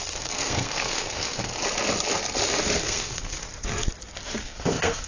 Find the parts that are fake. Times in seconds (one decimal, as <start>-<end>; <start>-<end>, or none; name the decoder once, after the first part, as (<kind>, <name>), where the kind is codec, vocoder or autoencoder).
0.0-1.5 (codec, SNAC); 2.8-3.5; 4.4-5.1